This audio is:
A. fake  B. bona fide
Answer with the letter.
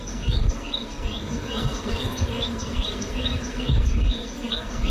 A